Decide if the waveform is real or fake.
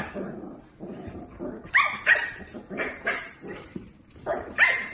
fake